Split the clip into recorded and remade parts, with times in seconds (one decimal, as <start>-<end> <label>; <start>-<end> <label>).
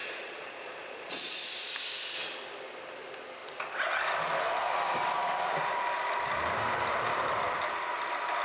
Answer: 0.0-1.7 remade; 1.7-8.4 recorded